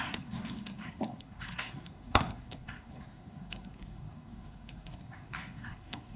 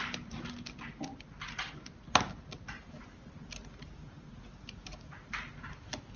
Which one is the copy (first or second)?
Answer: first